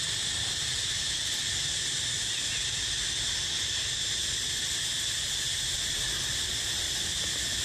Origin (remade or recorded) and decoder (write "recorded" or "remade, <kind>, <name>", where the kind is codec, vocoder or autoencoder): recorded